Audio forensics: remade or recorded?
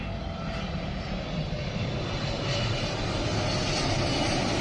recorded